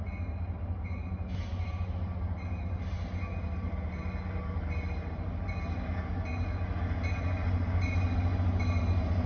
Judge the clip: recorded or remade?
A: recorded